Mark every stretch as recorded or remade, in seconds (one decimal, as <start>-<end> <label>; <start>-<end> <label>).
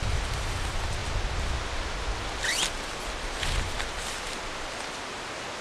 0.0-5.6 recorded